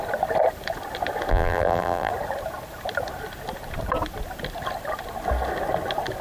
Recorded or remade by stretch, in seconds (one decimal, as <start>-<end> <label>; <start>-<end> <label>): 0.0-1.3 recorded; 1.3-2.1 remade; 2.1-6.2 recorded